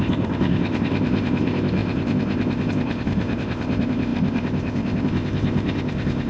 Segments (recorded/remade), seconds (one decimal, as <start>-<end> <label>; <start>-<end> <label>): 0.0-6.3 remade